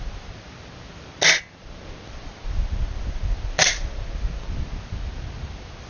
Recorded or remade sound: recorded